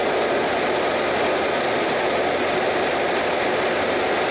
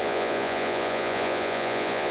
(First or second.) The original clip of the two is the first